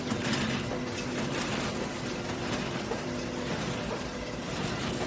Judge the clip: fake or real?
real